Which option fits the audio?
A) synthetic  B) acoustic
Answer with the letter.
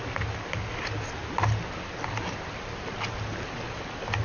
B